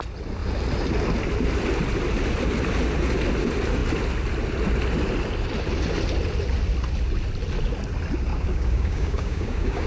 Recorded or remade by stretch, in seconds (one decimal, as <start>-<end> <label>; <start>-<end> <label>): 0.0-8.3 recorded; 8.3-9.9 remade